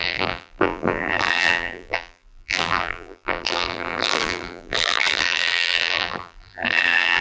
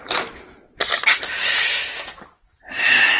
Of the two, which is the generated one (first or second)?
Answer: first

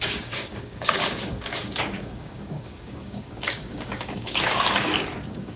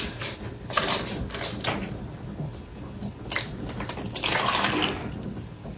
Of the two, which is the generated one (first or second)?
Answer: first